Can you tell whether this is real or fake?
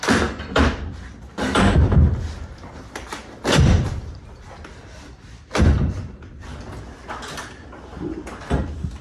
fake